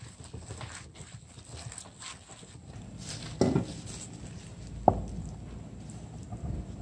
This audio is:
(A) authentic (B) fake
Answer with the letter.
A